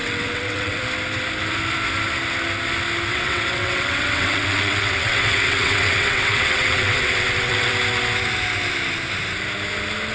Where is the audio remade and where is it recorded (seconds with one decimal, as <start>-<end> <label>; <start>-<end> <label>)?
0.0-0.8 remade; 0.8-3.1 recorded; 3.1-7.7 remade; 7.7-10.1 recorded